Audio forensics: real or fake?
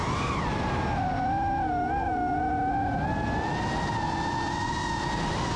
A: real